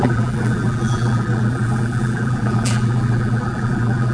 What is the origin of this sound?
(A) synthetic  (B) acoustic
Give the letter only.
A